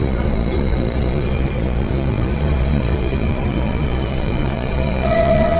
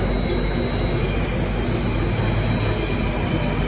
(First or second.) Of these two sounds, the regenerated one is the first